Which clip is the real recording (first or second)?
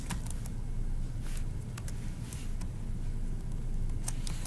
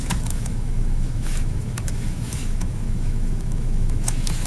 first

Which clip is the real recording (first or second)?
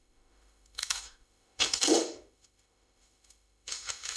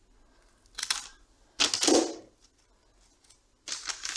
second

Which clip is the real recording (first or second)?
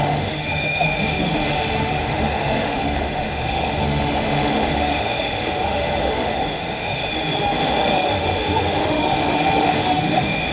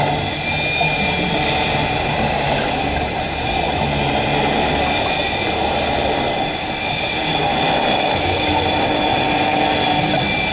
second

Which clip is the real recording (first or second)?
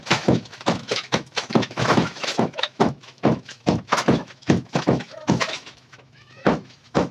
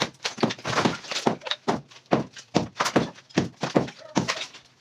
second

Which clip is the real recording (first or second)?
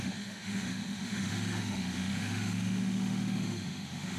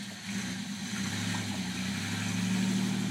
second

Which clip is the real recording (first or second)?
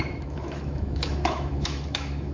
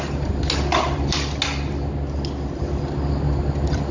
second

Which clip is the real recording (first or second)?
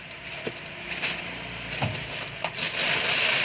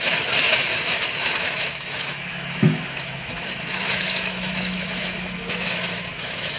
first